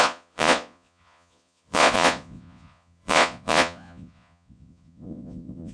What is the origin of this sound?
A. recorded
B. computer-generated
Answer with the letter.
B